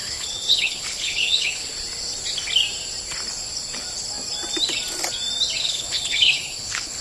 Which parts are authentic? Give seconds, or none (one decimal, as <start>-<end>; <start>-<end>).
1.7-5.6